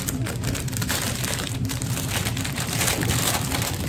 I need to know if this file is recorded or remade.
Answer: remade